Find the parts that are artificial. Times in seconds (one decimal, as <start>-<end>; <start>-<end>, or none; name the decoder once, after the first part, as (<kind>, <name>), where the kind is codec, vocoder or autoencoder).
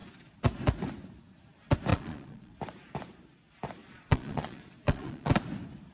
1.9-2.5 (vocoder, Vocos); 3.8-5.3